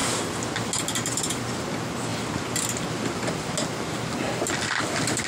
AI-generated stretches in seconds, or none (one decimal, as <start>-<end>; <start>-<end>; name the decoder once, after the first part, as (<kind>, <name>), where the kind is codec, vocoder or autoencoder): none